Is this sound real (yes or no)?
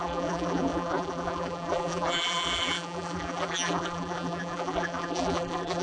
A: no